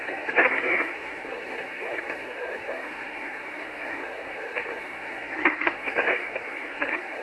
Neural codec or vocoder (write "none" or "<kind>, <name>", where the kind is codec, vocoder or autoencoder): codec, SNAC